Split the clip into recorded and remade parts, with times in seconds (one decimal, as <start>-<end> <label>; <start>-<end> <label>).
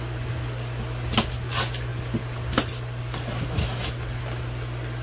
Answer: 0.0-5.0 recorded